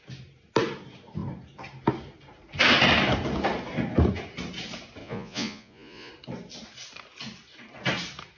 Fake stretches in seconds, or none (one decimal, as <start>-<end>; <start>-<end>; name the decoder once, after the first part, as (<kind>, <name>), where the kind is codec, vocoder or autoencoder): 5.0-6.1 (vocoder, Vocos)